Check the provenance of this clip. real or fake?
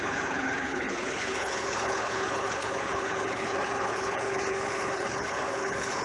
fake